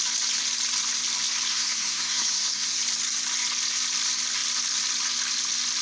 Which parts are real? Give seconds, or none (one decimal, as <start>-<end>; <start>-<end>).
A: 0.0-1.5; 2.8-5.8